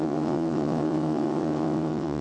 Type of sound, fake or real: fake